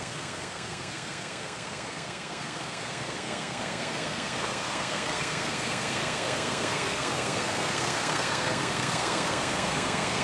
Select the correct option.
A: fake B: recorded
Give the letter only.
A